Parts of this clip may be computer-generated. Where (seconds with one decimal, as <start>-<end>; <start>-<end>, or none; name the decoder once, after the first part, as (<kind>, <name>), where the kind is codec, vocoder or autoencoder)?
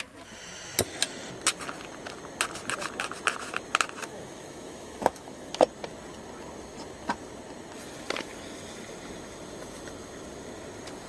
4.0-5.5 (autoencoder, DAC-VAE)